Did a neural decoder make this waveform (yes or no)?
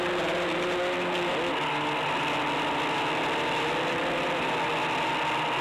no